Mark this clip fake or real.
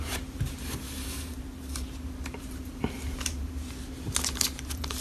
fake